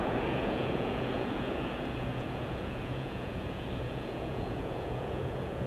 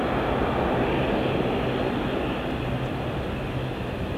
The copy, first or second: first